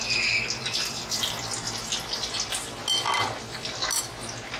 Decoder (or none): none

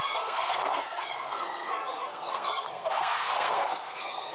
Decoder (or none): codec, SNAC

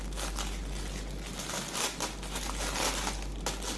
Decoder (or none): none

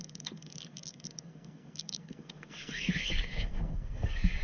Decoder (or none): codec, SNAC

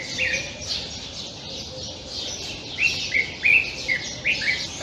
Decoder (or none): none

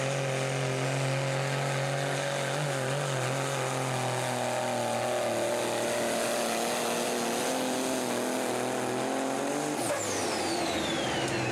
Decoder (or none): none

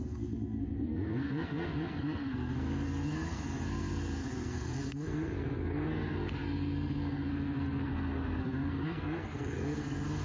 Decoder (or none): codec, SNAC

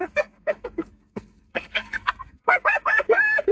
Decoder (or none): codec, SNAC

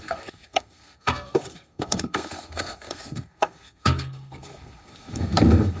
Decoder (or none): codec, SNAC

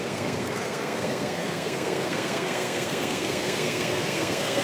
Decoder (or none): codec, SNAC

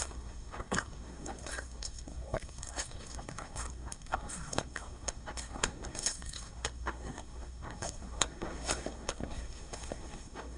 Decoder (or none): codec, SNAC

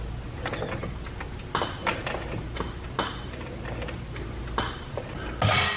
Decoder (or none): none